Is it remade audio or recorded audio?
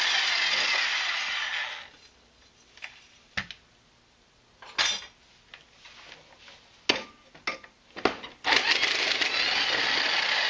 recorded